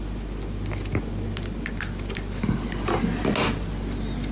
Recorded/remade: recorded